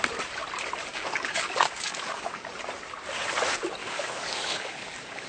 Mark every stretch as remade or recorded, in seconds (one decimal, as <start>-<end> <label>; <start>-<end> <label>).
0.0-0.9 recorded; 0.9-2.5 remade; 2.5-3.8 recorded; 3.8-5.3 remade